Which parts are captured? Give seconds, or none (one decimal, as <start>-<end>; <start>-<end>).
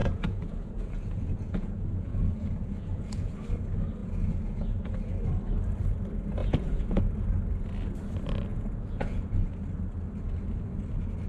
3.3-4.0; 5.1-6.4; 7.0-8.5; 9.5-11.3